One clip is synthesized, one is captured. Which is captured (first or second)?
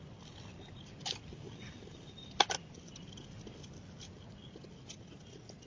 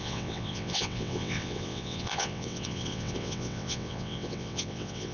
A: first